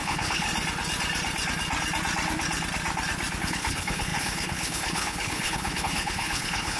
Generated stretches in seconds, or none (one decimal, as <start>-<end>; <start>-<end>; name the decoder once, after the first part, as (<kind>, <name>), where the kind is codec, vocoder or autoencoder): 0.0-0.5 (codec, HILCodec); 3.4-6.8